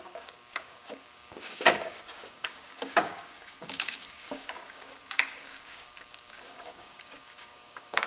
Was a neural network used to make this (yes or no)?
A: yes